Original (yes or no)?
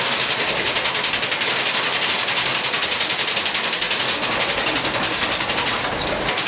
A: yes